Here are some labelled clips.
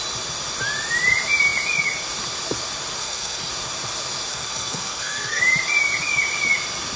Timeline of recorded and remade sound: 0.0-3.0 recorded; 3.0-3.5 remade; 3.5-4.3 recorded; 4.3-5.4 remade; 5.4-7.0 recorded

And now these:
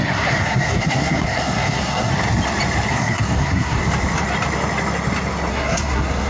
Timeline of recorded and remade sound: 0.0-2.1 remade; 2.1-2.9 recorded; 2.9-3.8 remade; 3.8-5.5 recorded; 5.5-6.3 remade

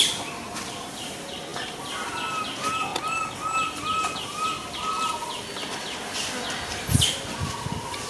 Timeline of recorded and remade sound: 0.0-8.1 recorded

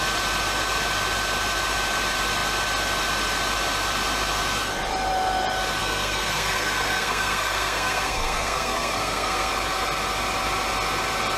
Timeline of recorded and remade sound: 0.0-5.8 recorded; 5.8-9.5 remade; 9.5-11.4 recorded

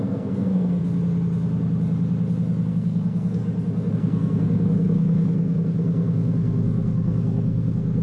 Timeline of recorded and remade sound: 0.0-0.8 remade; 0.8-2.7 recorded; 2.7-3.4 remade; 3.4-3.9 recorded; 3.9-8.0 remade